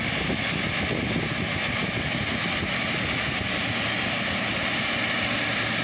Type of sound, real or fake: real